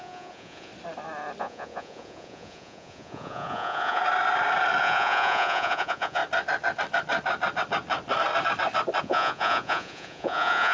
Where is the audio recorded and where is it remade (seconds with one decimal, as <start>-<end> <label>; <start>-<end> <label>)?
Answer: 0.0-0.7 remade; 0.7-1.4 recorded; 1.4-4.0 remade; 4.0-4.8 recorded; 4.8-6.2 remade; 6.2-9.0 recorded; 9.0-10.7 remade